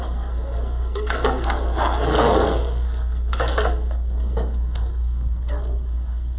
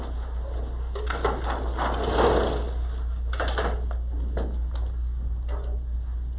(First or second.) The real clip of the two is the second